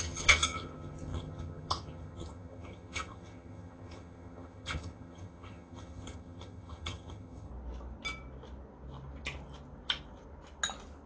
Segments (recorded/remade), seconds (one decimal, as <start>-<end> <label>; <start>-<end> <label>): 0.0-7.5 remade; 7.5-11.1 recorded